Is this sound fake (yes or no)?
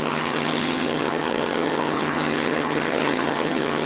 yes